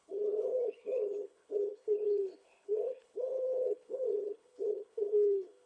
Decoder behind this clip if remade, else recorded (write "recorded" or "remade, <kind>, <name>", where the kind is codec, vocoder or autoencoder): remade, codec, HILCodec